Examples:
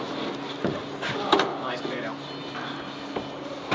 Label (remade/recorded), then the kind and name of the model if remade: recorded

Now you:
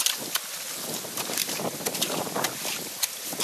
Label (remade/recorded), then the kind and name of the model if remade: recorded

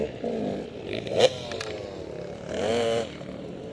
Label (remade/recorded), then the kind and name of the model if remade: recorded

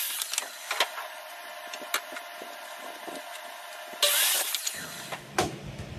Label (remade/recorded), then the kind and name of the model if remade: recorded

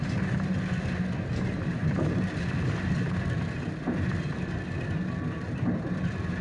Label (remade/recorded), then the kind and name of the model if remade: recorded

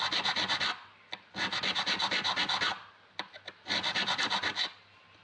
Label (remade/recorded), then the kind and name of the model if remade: recorded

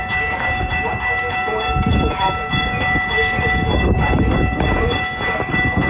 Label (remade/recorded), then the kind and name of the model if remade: remade, codec, DAC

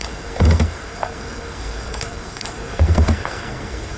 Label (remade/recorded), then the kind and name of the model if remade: remade, codec, SNAC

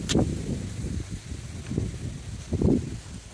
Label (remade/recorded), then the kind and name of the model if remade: recorded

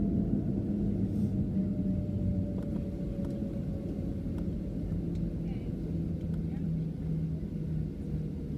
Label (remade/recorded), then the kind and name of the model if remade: recorded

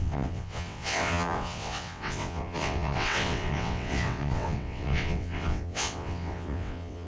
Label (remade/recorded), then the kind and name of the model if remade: remade, vocoder, WaveNeXt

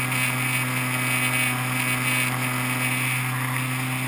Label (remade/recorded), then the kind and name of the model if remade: recorded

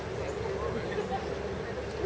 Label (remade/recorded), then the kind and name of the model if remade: recorded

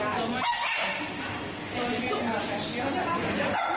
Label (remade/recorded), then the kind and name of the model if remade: recorded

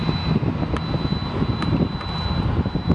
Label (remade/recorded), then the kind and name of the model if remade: recorded